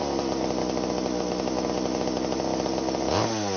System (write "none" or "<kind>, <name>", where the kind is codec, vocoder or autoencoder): none